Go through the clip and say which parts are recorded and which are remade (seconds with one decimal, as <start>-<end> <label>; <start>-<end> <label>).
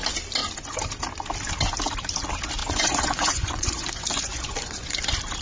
0.0-2.6 recorded; 2.6-5.0 remade; 5.0-5.4 recorded